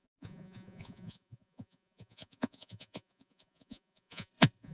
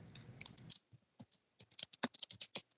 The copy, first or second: first